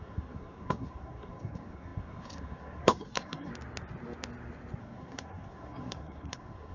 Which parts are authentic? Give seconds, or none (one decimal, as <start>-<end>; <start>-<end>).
3.5-4.8